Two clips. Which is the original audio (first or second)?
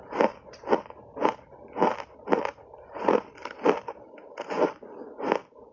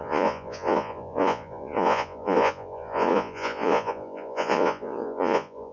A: first